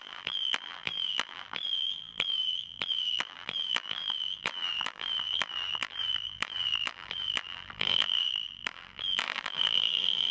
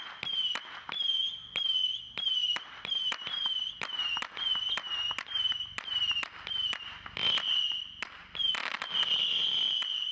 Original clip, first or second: second